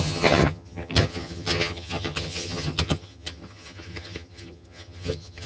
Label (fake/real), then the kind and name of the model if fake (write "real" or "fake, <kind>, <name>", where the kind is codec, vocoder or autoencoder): fake, vocoder, HiFi-GAN